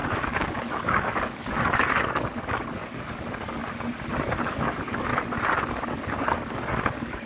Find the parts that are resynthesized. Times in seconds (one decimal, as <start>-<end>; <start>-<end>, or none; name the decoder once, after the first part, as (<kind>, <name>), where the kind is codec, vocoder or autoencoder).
0.0-3.6 (codec, DAC); 4.5-5.1; 5.7-7.3

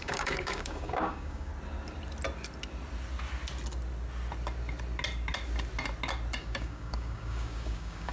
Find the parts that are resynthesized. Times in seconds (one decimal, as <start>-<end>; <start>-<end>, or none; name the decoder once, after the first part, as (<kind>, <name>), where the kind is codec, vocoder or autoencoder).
0.0-1.5 (codec, DAC); 6.4-8.1

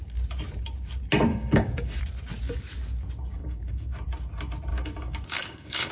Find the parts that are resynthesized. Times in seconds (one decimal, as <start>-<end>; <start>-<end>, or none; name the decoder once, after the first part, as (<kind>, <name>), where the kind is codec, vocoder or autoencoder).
1.3-2.0 (codec, DAC); 3.4-3.9; 4.7-5.9

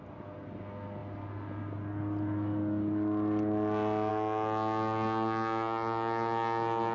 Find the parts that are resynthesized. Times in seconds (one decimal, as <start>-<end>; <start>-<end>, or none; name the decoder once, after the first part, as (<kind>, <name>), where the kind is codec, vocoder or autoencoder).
none

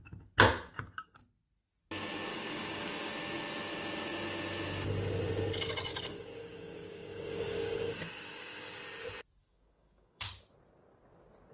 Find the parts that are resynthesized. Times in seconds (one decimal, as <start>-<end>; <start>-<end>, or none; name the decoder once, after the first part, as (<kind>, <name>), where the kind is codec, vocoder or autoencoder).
2.3-3.1 (codec, DAC); 5.9-8.8; 9.4-10.3